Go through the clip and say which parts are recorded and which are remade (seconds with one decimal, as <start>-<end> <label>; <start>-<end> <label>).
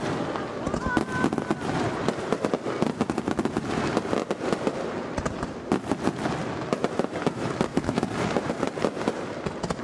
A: 0.0-7.7 recorded; 7.7-8.5 remade; 8.5-9.8 recorded